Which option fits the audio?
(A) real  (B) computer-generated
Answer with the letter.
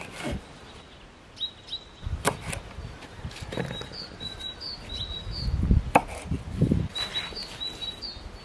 A